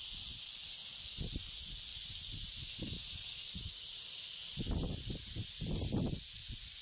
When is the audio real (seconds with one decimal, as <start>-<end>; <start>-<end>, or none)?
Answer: 0.0-6.8